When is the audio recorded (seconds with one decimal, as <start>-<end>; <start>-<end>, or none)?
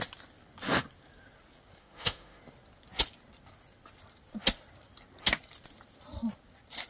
0.0-1.8; 2.4-6.9